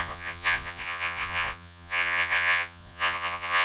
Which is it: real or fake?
fake